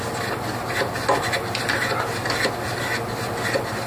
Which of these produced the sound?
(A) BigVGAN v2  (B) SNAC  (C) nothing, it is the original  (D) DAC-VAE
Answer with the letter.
C